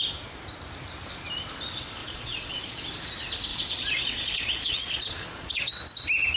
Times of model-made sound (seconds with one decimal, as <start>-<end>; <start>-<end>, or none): 2.0-2.8; 3.5-5.7